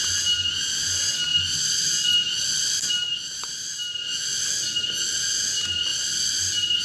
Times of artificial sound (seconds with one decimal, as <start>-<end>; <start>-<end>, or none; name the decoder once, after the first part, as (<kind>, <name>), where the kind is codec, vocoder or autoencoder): 1.3-5.3 (vocoder, BigVGAN v2); 5.9-6.8